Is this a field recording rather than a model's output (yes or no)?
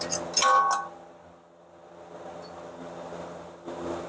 yes